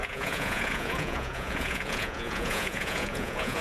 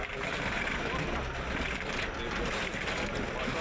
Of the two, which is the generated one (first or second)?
first